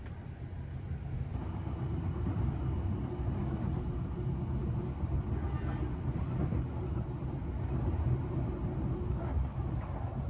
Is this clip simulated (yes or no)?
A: no